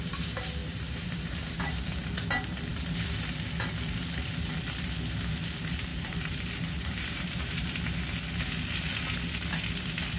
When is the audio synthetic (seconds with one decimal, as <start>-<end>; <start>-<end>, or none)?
0.6-1.8; 5.9-7.8